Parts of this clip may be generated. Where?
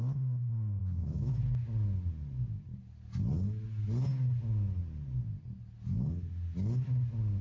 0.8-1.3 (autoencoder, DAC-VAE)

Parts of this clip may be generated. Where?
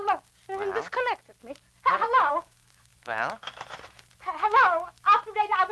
2.3-5.7 (autoencoder, DAC-VAE)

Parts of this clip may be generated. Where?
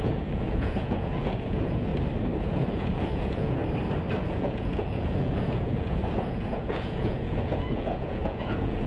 0.0-1.9 (vocoder, Vocos); 2.4-3.6; 4.2-8.9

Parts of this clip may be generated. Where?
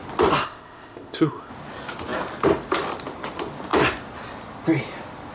0.4-1.5 (codec, ZipCodec)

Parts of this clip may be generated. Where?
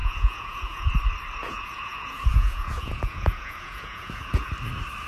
0.0-0.9 (vocoder, Vocos); 1.4-4.5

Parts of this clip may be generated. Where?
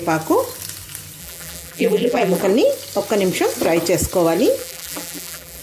1.2-2.4 (vocoder, BigVGAN v2); 4.6-5.6